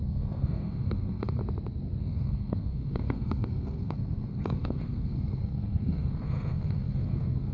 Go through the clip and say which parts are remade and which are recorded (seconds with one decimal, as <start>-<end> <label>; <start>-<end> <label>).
0.0-1.4 remade; 1.4-2.0 recorded; 2.0-7.5 remade